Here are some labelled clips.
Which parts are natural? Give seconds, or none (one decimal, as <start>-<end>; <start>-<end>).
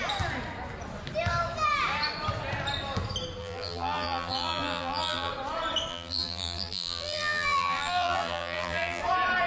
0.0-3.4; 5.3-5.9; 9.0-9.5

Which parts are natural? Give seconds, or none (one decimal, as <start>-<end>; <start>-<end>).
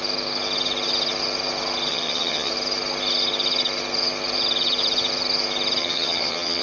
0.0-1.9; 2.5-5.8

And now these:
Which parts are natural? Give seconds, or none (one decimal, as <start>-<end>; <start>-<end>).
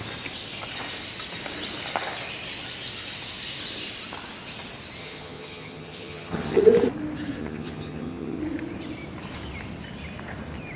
0.0-5.0; 6.6-7.4; 8.4-10.8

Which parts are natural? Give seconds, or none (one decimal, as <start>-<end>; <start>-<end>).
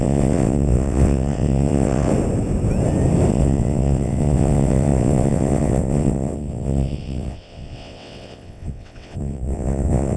2.1-3.3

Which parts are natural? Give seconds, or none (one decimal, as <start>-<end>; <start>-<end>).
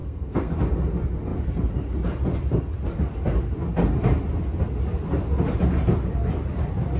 0.5-7.0